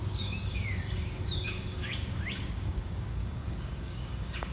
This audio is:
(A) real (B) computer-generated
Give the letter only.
B